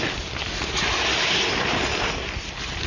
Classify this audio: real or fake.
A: real